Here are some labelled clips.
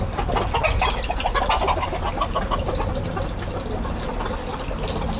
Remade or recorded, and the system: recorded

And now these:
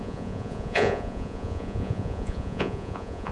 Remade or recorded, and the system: remade, vocoder, Vocos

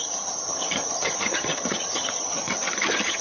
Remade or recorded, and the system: remade, vocoder, HiFi-GAN